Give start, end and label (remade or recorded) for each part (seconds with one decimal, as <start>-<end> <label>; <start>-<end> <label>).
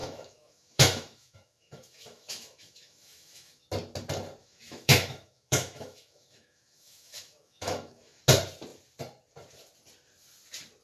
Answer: 0.0-3.6 remade; 3.6-4.4 recorded; 4.4-8.2 remade; 8.2-10.8 recorded